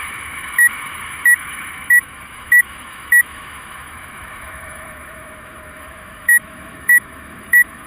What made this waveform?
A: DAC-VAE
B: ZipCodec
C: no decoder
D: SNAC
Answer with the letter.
A